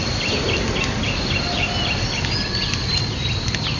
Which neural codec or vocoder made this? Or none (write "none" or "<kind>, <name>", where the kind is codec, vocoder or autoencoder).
none